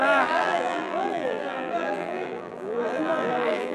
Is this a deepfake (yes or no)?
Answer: yes